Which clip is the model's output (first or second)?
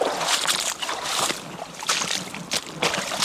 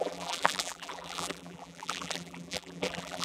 second